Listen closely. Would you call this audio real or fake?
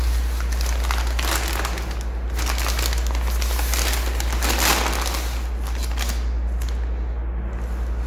real